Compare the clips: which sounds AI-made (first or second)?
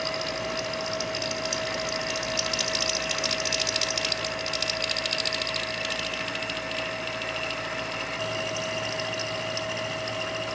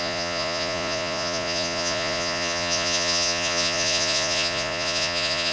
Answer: second